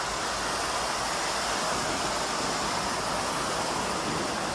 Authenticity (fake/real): real